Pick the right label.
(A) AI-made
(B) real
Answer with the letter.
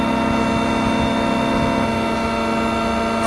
B